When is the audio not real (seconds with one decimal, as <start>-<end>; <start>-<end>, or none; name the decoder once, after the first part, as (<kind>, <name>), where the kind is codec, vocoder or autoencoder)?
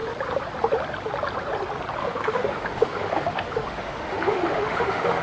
2.0-5.2 (autoencoder, DAC-VAE)